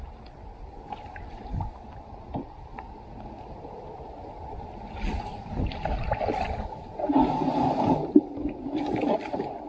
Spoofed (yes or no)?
no